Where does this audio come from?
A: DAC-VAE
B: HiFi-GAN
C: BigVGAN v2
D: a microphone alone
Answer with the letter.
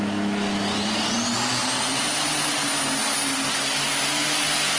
D